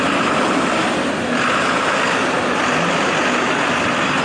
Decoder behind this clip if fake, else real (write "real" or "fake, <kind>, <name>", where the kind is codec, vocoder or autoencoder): real